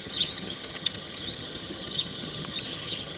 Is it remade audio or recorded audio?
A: remade